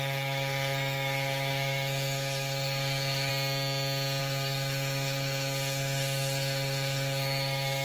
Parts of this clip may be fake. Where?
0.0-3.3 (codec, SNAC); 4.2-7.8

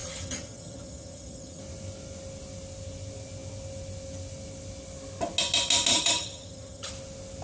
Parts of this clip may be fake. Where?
0.0-1.6 (vocoder, HiFi-GAN); 5.9-6.9

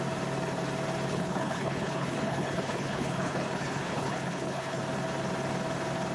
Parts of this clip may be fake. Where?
1.1-4.8 (codec, HILCodec)

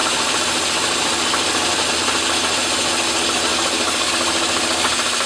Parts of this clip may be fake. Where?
3.5-4.1 (codec, DAC)

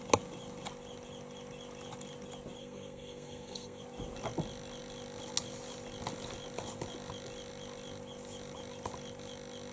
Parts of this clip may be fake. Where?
2.6-3.8 (codec, SNAC)

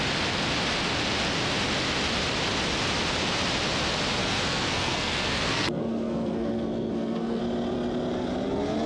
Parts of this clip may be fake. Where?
4.2-7.4 (codec, SNAC)

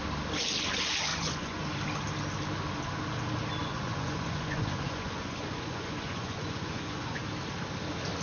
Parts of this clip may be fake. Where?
1.1-1.6 (vocoder, Vocos); 3.6-7.2